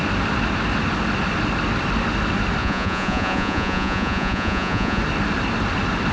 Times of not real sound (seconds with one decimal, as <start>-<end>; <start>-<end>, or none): 2.6-5.0